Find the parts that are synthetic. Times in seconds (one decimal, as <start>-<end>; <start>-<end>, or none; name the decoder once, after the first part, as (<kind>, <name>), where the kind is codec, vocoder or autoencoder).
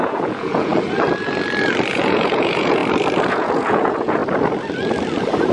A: 0.0-0.7 (vocoder, Vocos); 1.9-2.8; 3.3-4.2